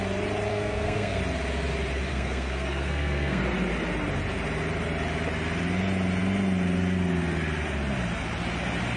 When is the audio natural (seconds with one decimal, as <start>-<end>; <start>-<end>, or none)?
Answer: 0.0-0.5; 1.2-2.1; 3.4-9.0